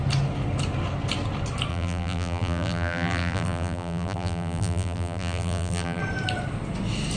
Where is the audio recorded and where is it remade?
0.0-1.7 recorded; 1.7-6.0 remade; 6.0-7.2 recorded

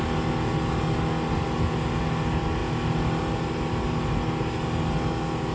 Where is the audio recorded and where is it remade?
0.0-5.5 recorded

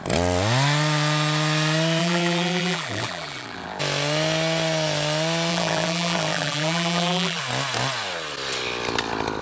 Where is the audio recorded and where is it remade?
0.0-2.0 recorded; 2.0-3.8 remade; 3.8-5.5 recorded; 5.5-7.4 remade; 7.4-9.4 recorded

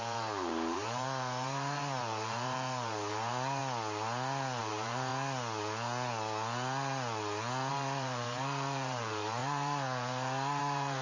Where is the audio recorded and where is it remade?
0.0-3.6 remade; 3.6-4.6 recorded; 4.6-5.1 remade; 5.1-7.7 recorded; 7.7-11.0 remade

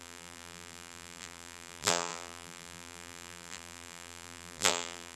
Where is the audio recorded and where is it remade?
0.0-5.2 remade

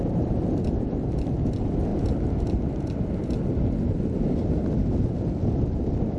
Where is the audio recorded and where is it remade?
0.0-1.9 remade; 1.9-5.1 recorded; 5.1-6.2 remade